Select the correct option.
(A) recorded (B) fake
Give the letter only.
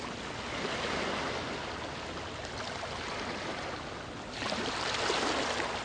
A